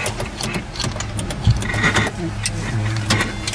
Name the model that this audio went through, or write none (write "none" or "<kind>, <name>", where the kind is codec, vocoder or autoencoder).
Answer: none